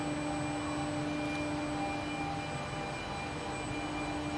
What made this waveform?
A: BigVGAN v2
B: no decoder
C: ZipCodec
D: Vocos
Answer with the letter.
B